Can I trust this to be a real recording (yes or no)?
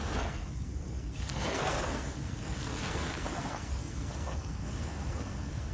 no